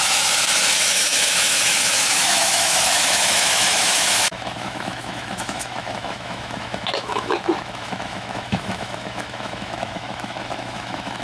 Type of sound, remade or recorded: remade